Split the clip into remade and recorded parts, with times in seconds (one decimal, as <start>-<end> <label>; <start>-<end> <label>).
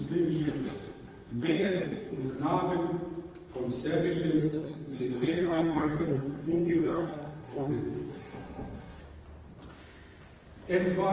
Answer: 0.0-0.4 recorded; 0.4-2.3 remade; 2.3-4.4 recorded; 4.4-7.7 remade; 7.7-8.1 recorded; 8.1-9.0 remade; 9.0-11.1 recorded